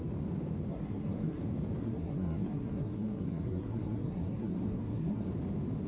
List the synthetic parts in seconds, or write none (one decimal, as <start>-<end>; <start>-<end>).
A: 0.7-1.4; 1.8-5.3